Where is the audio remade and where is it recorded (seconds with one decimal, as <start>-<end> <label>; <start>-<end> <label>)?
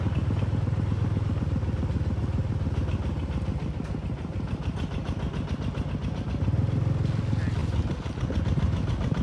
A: 0.0-9.2 recorded